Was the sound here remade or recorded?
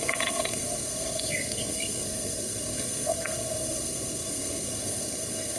remade